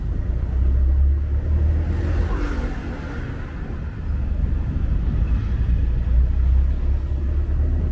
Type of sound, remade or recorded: recorded